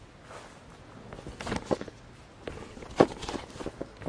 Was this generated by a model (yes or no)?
no